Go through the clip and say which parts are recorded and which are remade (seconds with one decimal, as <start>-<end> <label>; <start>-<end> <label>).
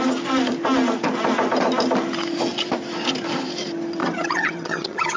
0.0-4.0 recorded; 4.0-5.2 remade